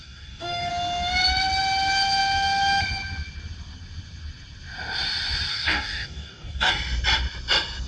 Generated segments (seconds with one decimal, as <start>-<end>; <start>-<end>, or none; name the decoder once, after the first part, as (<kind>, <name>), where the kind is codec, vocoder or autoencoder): 0.0-0.7 (codec, DAC); 5.5-6.7